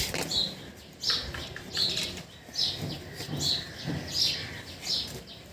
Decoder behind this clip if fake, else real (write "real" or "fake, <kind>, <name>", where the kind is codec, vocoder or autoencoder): real